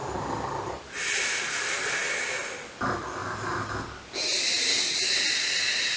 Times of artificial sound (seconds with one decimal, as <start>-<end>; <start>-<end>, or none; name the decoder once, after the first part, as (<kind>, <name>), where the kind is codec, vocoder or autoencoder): none